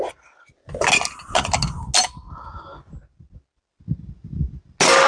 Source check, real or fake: real